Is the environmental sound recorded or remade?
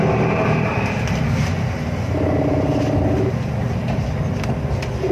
recorded